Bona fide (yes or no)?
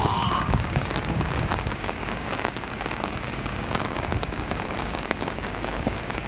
no